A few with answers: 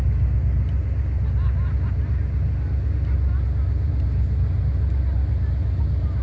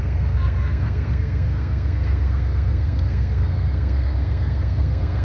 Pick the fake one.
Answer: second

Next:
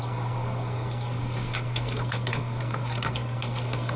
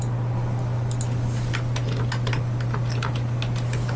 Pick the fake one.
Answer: first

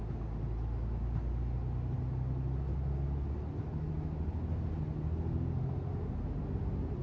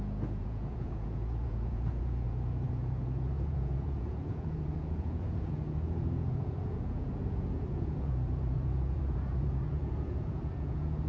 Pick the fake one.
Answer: second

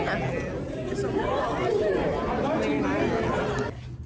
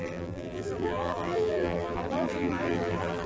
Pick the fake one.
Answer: second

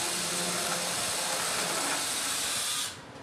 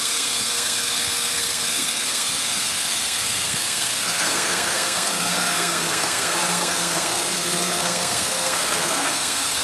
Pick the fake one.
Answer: second